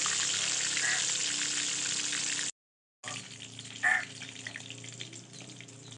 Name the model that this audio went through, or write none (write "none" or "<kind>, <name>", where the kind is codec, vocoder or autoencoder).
none